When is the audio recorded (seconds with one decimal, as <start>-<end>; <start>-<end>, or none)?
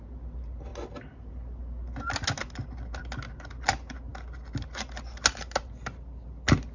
0.0-6.7